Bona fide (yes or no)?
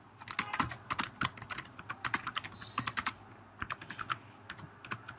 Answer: yes